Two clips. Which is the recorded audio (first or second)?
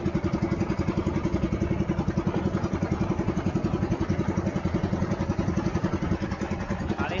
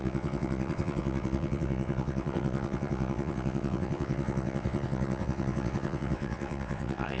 first